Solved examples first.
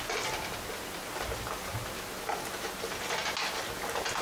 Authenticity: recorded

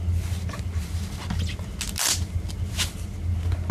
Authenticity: recorded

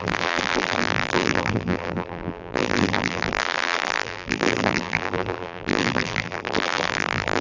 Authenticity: remade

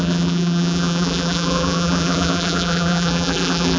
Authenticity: remade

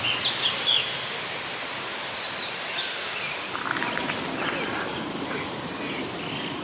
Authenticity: remade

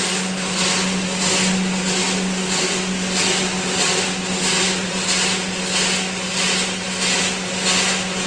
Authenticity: recorded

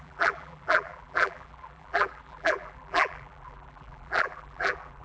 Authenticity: remade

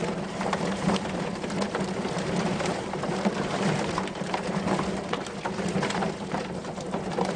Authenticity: remade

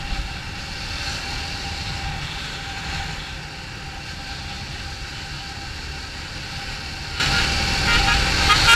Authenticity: recorded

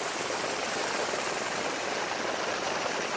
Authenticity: recorded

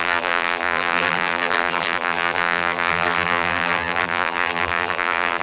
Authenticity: remade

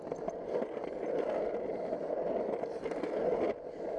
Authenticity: recorded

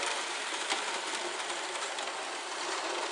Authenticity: remade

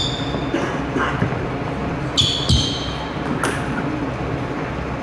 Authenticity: recorded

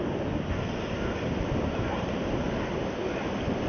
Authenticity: recorded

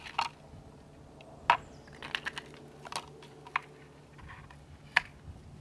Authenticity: recorded